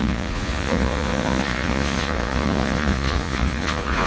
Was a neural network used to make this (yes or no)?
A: yes